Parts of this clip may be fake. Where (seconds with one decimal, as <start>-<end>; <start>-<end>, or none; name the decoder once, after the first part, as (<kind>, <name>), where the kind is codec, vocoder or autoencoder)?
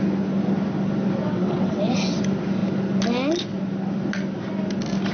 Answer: 1.2-2.2 (vocoder, WaveNeXt)